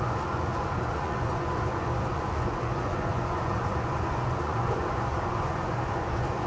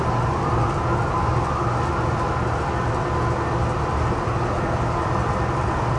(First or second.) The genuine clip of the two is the second